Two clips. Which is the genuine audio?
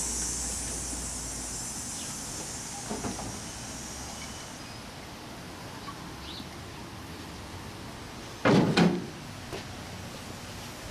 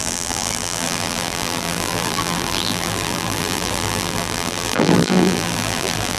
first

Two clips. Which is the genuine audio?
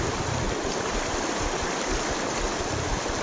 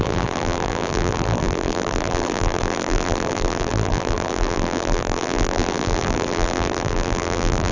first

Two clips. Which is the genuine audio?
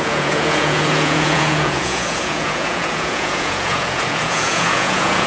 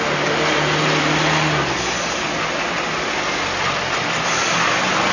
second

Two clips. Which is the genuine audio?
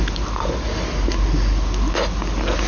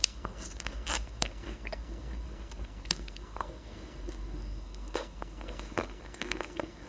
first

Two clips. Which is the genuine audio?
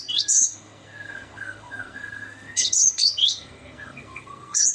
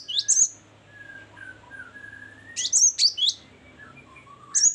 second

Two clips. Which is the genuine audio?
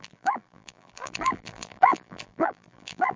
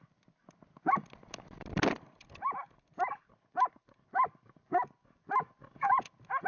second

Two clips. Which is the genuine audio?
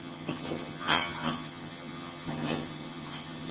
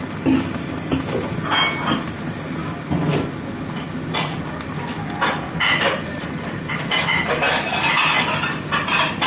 second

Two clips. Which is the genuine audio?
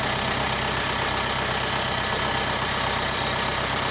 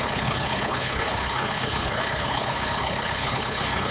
first